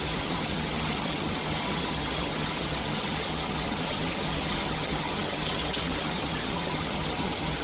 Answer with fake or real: fake